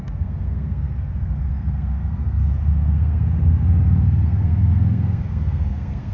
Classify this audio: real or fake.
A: fake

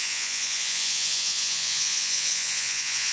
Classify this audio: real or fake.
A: fake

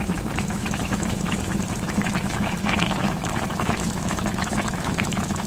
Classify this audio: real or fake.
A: fake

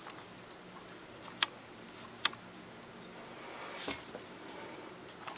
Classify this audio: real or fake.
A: real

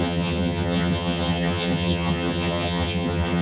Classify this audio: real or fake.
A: fake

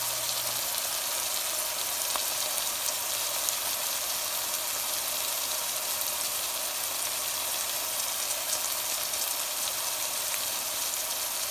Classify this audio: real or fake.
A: real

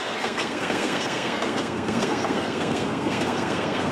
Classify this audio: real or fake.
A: fake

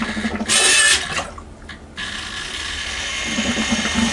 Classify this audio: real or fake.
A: real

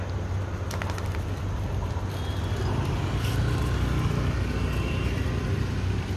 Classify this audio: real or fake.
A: real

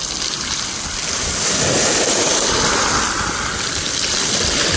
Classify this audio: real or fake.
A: real